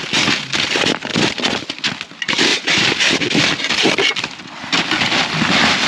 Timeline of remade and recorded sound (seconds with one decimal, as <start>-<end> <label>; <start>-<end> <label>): 0.0-2.5 recorded; 2.5-3.2 remade; 3.2-5.9 recorded